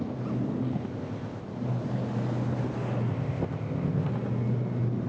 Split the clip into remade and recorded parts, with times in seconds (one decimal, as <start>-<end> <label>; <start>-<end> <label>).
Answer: 0.0-0.8 recorded; 0.8-1.4 remade; 1.4-3.1 recorded; 3.1-4.1 remade; 4.1-5.1 recorded